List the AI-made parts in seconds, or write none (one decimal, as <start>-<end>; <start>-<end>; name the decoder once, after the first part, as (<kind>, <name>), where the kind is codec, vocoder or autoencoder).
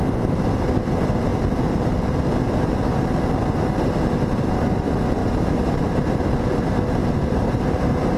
0.0-0.7 (vocoder, BigVGAN v2); 5.2-8.2